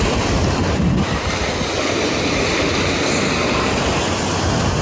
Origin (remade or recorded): recorded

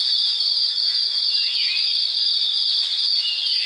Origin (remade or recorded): recorded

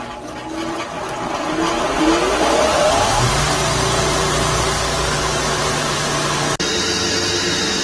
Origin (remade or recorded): recorded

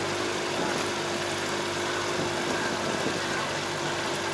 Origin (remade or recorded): recorded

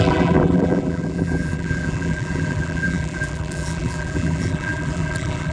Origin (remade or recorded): remade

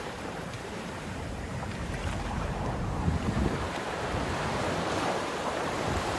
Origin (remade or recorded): remade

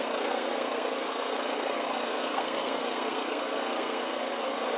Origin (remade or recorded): remade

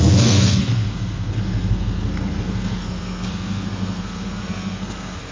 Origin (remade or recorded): remade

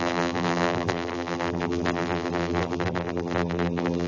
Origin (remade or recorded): remade